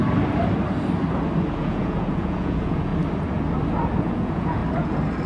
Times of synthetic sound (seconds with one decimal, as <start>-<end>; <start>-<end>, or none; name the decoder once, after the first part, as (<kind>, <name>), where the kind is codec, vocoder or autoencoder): 1.6-2.9 (vocoder, Vocos); 4.0-4.6